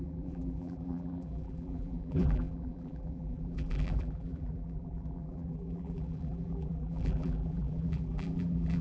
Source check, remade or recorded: remade